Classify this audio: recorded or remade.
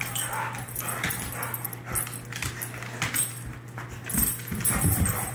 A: recorded